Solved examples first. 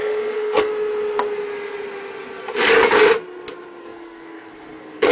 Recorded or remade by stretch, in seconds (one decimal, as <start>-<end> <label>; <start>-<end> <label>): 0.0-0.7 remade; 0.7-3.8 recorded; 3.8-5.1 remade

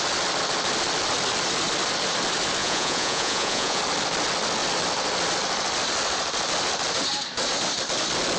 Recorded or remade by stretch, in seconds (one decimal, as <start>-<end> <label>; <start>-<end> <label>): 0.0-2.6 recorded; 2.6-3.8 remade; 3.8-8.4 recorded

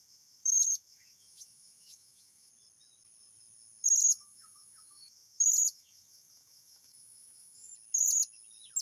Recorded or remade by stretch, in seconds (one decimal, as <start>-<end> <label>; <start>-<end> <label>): 0.0-2.5 remade; 2.5-4.0 recorded; 4.0-7.7 remade; 7.7-8.8 recorded

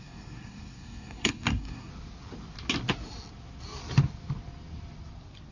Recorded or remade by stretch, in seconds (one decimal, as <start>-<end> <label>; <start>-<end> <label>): 0.0-1.9 remade; 1.9-5.5 recorded